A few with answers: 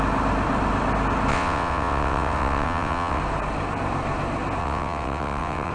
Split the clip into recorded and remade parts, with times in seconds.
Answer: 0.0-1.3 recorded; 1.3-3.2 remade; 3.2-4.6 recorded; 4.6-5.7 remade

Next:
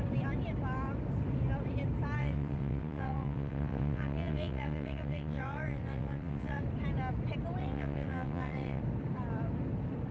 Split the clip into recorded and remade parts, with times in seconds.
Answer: 0.0-2.2 recorded; 2.2-6.6 remade; 6.6-7.6 recorded; 7.6-8.8 remade; 8.8-10.1 recorded

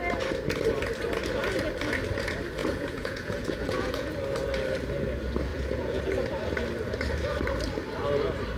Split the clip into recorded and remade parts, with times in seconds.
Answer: 0.0-2.6 recorded; 2.6-4.1 remade; 4.1-5.5 recorded; 5.5-6.0 remade; 6.0-8.6 recorded

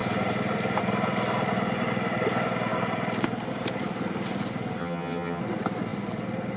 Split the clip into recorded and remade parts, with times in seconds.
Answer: 0.0-4.8 recorded; 4.8-5.4 remade; 5.4-6.6 recorded

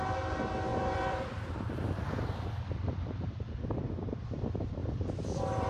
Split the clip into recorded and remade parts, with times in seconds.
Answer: 0.0-0.7 recorded; 0.7-1.5 remade; 1.5-4.8 recorded; 4.8-5.7 remade

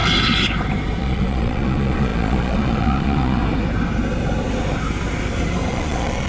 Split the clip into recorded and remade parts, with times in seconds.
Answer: 0.0-1.0 recorded; 1.0-3.4 remade; 3.4-5.7 recorded; 5.7-6.3 remade